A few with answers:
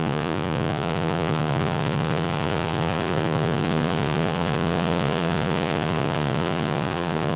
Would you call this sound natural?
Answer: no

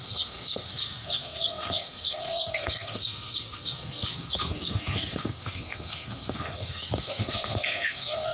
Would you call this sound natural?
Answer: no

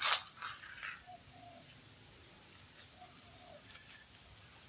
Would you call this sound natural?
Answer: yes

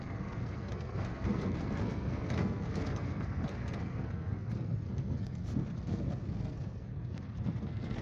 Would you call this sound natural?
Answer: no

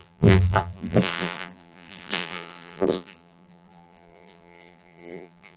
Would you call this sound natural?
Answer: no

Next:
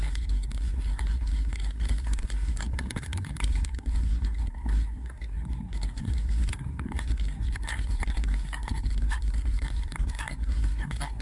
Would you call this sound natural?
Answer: no